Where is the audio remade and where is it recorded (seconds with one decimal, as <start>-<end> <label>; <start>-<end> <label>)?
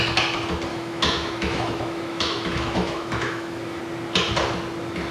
0.0-0.7 recorded; 0.7-3.8 remade; 3.8-5.1 recorded